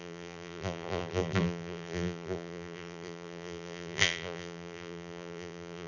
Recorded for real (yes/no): no